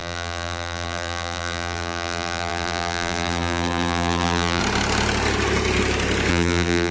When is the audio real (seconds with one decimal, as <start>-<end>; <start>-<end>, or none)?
4.6-6.3